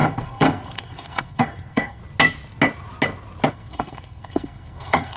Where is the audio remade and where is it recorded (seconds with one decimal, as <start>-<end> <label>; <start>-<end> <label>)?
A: 0.0-2.0 remade; 2.0-3.5 recorded; 3.5-5.2 remade